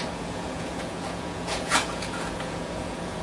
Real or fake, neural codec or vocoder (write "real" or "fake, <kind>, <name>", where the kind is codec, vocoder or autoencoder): fake, vocoder, Vocos